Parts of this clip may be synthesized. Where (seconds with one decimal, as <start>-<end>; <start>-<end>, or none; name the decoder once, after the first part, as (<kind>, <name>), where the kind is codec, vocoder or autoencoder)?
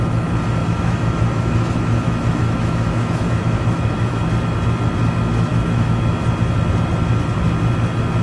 0.6-4.2 (autoencoder, DAC-VAE); 5.5-6.1